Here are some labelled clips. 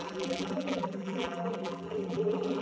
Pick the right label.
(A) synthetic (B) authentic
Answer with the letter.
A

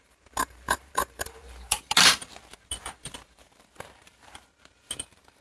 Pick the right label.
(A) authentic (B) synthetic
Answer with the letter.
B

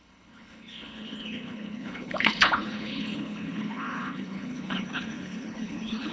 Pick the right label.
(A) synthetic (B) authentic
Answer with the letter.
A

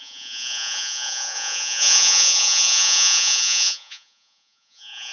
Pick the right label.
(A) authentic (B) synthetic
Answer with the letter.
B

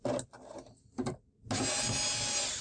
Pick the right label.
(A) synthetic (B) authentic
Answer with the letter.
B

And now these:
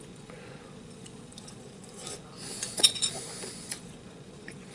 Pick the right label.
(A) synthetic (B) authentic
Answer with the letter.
A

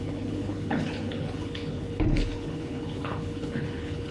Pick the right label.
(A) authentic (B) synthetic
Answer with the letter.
B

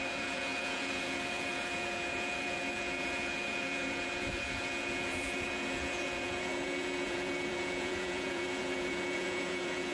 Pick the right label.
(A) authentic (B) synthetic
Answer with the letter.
B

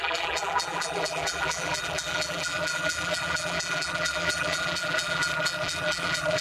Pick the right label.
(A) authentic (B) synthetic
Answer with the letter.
B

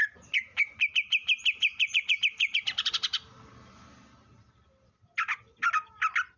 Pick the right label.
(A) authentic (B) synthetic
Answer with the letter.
A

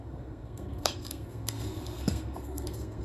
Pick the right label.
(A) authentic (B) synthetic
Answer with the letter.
B